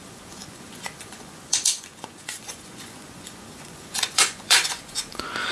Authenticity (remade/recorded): remade